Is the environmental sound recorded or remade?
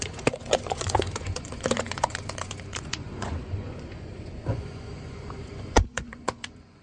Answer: remade